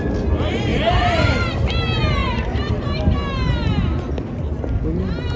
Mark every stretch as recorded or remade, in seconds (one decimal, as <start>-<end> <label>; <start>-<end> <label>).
0.0-0.7 recorded; 0.7-1.5 remade; 1.5-2.2 recorded; 2.2-2.7 remade; 2.7-5.4 recorded